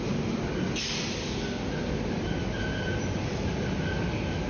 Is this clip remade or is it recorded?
recorded